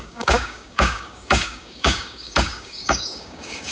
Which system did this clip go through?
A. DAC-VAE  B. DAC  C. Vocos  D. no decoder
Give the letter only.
B